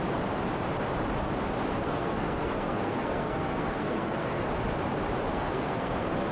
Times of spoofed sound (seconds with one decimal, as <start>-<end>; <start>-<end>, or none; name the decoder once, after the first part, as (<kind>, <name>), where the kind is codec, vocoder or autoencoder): 1.7-4.4 (codec, SNAC); 5.3-6.3